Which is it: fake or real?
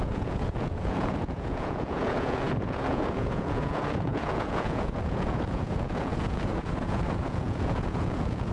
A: fake